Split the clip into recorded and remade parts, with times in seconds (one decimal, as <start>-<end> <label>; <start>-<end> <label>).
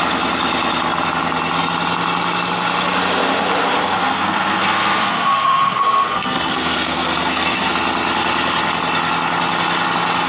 0.0-4.0 recorded; 4.0-7.7 remade; 7.7-10.3 recorded